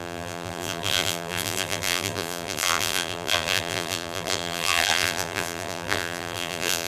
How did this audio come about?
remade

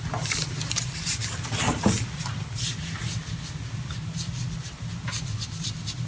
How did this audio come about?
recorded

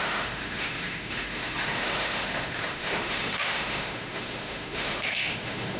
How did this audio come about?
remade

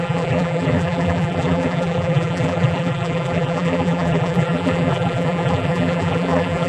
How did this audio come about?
remade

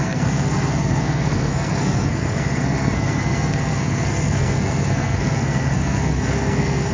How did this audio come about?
remade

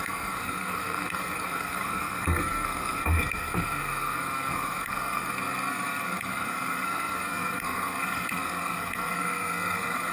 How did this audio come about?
remade